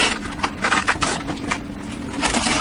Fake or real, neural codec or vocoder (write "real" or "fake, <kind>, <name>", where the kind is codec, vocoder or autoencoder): real